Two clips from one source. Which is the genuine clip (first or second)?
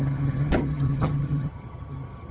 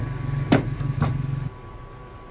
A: second